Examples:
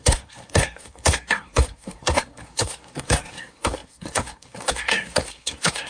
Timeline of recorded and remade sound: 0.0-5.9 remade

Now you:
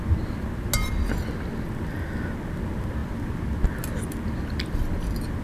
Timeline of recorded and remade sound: 0.0-5.4 recorded

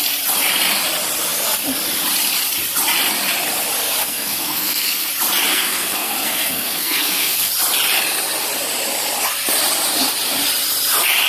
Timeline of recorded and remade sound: 0.0-4.0 recorded; 4.0-5.1 remade; 5.1-5.5 recorded; 5.5-7.5 remade; 7.5-11.3 recorded

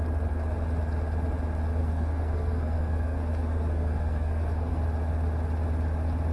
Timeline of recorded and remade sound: 0.0-1.8 recorded; 1.8-4.8 remade; 4.8-6.3 recorded

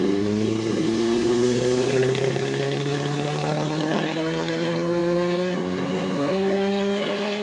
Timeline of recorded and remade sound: 0.0-7.4 remade

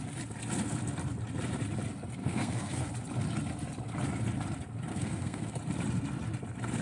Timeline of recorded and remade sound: 0.0-2.2 recorded; 2.2-2.9 remade; 2.9-4.9 recorded; 4.9-5.5 remade; 5.5-6.8 recorded

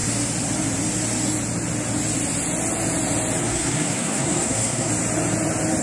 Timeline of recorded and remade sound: 0.0-3.4 recorded; 3.4-4.9 remade; 4.9-5.8 recorded

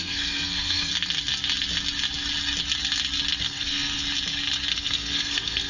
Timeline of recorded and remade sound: 0.0-0.9 remade; 0.9-3.4 recorded; 3.4-4.0 remade; 4.0-4.7 recorded; 4.7-5.7 remade